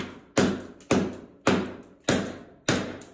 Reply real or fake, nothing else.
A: real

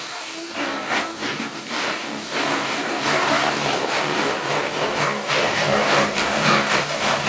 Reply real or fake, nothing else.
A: fake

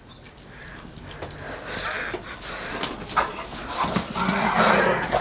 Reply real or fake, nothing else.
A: real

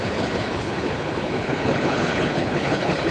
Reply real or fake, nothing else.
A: fake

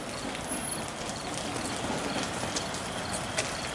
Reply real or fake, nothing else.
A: real